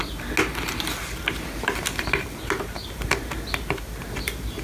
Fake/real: real